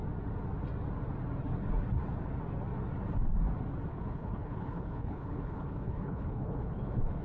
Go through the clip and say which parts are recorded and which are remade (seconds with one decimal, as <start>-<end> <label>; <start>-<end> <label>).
0.0-3.9 recorded; 3.9-7.2 remade

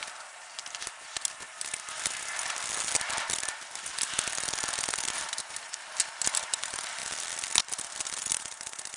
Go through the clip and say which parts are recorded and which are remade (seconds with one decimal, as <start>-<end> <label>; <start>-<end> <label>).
0.0-9.0 recorded

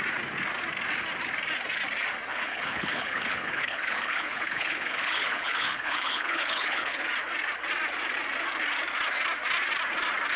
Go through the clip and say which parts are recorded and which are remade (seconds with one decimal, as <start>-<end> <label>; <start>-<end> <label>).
0.0-2.3 recorded; 2.3-7.0 remade; 7.0-10.4 recorded

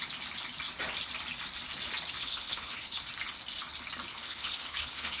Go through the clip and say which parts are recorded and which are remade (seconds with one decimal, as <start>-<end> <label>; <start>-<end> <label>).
0.0-2.2 recorded; 2.2-3.0 remade; 3.0-4.1 recorded; 4.1-5.2 remade

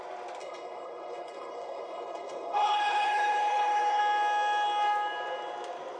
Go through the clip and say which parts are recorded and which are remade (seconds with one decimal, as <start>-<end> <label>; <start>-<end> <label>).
0.0-0.4 recorded; 0.4-4.0 remade; 4.0-6.0 recorded

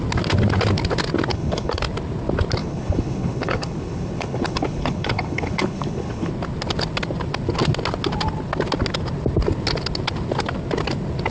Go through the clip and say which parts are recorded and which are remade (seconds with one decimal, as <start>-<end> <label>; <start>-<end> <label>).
0.0-1.3 recorded; 1.3-1.8 remade; 1.8-2.6 recorded; 2.6-6.3 remade; 6.3-11.3 recorded

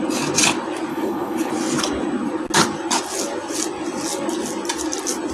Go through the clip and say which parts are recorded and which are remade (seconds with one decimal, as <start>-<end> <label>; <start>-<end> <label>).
0.0-0.9 recorded; 0.9-1.5 remade; 1.5-5.3 recorded